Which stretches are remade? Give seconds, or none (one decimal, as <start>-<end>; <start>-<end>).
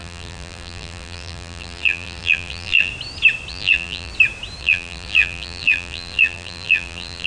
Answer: 0.0-2.9; 3.5-4.1; 4.6-7.3